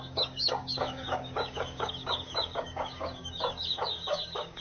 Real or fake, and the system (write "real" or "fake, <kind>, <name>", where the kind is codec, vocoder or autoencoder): fake, codec, DAC